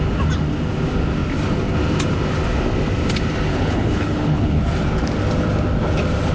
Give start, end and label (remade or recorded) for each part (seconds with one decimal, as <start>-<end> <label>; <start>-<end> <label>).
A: 0.0-3.5 recorded; 3.5-4.6 remade; 4.6-6.3 recorded